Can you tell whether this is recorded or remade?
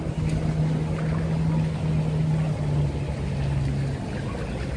recorded